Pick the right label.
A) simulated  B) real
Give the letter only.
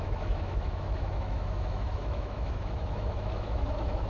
A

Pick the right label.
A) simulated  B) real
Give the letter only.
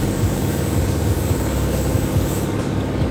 A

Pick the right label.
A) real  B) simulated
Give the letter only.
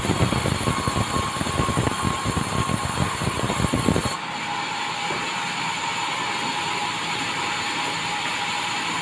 A